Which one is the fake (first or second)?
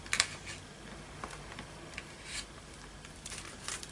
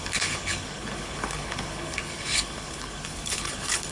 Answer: second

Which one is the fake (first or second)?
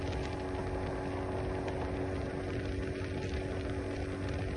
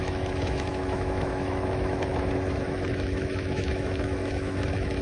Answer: second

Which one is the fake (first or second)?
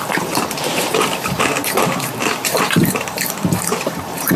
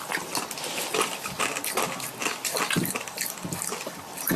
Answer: first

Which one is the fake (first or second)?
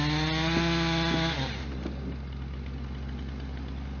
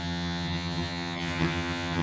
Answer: second